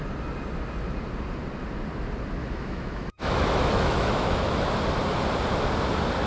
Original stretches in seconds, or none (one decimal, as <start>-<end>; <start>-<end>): 0.0-2.4; 4.7-6.3